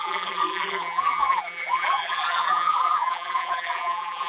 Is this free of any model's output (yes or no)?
no